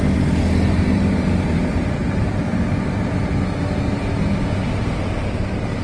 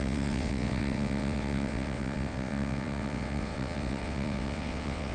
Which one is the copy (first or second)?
second